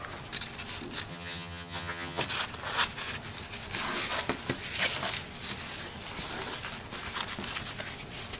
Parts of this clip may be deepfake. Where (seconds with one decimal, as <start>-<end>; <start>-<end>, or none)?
1.1-2.2